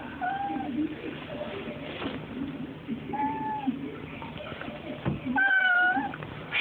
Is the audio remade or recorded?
remade